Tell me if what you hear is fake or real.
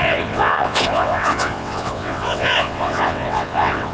fake